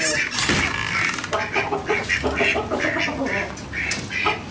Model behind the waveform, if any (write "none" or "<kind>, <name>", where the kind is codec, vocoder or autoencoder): none